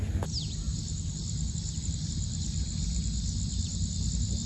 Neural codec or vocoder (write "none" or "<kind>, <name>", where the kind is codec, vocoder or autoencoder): none